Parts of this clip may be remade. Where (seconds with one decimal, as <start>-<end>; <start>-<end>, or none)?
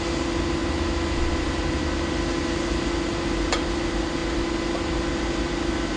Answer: none